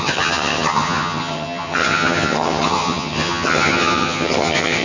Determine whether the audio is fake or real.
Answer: fake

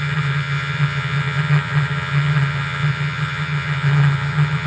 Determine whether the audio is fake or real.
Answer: fake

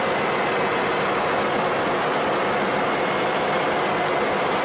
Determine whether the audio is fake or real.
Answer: real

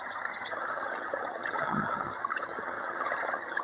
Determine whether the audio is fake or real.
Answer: fake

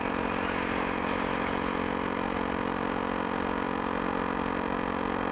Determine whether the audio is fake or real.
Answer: real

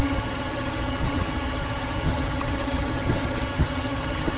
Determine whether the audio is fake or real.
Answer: fake